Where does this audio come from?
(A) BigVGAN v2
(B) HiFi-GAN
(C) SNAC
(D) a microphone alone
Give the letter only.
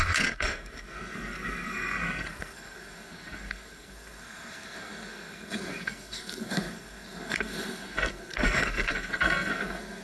C